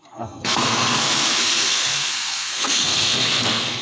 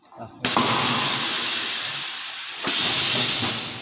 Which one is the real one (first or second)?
second